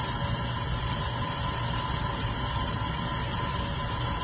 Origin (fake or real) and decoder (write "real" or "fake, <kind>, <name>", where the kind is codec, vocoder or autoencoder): real